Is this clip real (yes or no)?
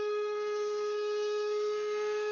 no